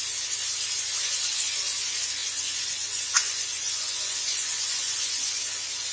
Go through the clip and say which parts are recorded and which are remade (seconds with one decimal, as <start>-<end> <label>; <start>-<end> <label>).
0.0-2.2 recorded; 2.2-5.4 remade; 5.4-5.9 recorded